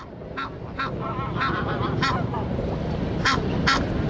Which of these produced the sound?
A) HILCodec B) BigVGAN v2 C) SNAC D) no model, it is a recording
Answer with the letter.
D